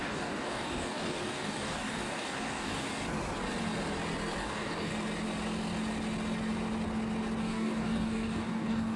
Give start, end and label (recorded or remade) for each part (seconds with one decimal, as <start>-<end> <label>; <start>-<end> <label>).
0.0-2.9 remade; 2.9-4.4 recorded; 4.4-4.9 remade; 4.9-7.4 recorded; 7.4-9.0 remade